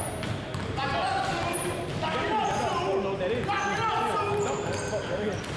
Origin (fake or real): real